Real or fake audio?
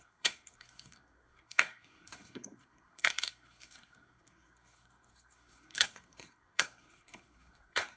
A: fake